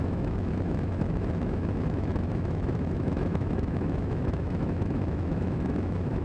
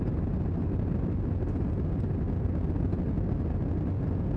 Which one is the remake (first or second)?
first